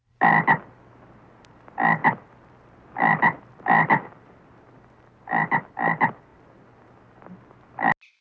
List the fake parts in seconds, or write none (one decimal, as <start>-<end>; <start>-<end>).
none